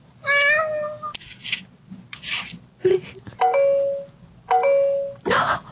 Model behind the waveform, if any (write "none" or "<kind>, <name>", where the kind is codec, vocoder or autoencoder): none